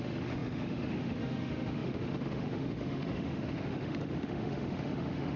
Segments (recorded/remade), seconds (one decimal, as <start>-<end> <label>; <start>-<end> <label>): 0.0-5.4 remade

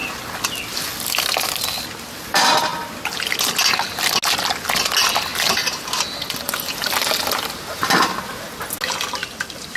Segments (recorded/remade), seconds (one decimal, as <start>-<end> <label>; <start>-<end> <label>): 0.0-9.8 recorded

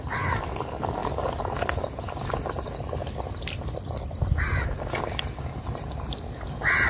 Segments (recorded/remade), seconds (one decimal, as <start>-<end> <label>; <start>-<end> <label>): 0.0-6.9 recorded

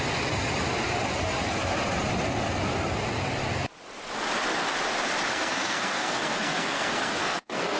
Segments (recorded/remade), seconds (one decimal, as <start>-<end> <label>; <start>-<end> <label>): 0.0-5.3 recorded; 5.3-7.8 remade

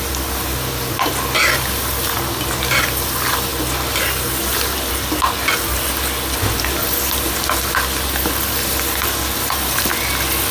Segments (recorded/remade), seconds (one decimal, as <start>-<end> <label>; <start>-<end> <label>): 0.0-10.5 recorded

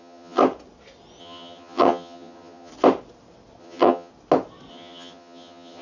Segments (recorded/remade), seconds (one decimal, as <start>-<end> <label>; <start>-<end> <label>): 0.0-0.4 remade; 0.4-1.2 recorded; 1.2-2.7 remade; 2.7-3.6 recorded; 3.6-4.1 remade; 4.1-4.7 recorded; 4.7-5.8 remade